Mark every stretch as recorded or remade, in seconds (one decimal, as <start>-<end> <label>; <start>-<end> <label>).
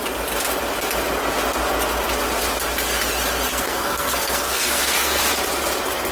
0.0-3.5 recorded; 3.5-5.2 remade; 5.2-6.1 recorded